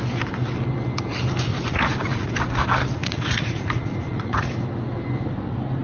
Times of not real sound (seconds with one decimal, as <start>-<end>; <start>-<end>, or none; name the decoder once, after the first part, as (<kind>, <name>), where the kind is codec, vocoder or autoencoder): 1.5-2.3 (vocoder, Vocos); 3.0-4.5